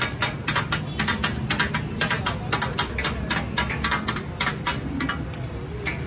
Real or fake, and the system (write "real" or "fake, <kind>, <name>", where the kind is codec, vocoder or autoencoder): real